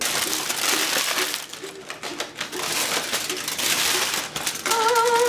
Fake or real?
real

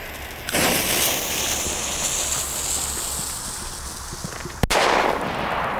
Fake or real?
real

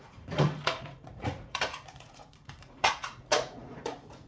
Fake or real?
fake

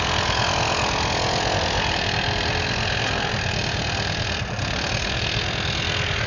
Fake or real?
real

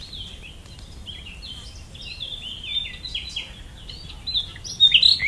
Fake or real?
real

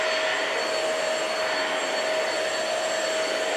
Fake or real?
real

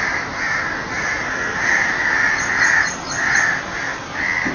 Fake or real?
real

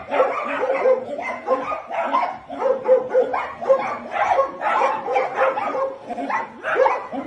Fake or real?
real